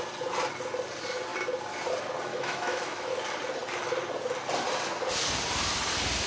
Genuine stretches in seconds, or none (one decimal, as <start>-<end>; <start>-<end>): 0.0-2.3; 3.1-6.3